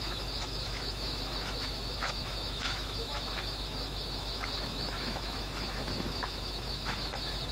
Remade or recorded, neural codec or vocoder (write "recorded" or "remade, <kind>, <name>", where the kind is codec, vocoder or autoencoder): remade, autoencoder, DAC-VAE